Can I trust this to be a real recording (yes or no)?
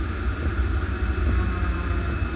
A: yes